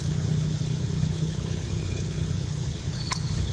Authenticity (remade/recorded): remade